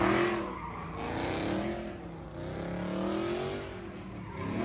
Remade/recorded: recorded